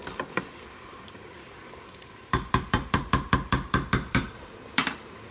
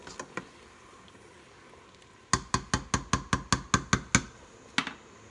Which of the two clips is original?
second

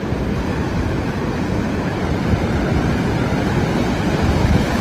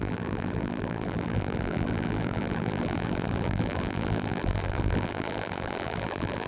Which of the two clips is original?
first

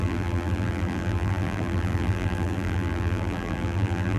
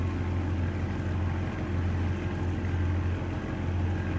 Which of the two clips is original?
second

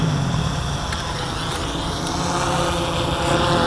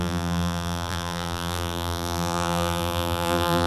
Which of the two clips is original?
first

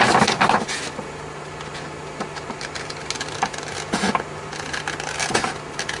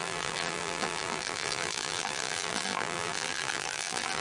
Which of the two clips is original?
first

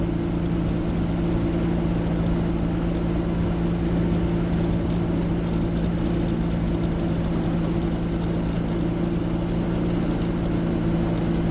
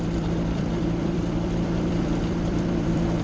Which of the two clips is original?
first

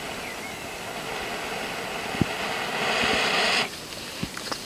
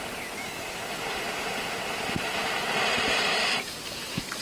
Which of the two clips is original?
first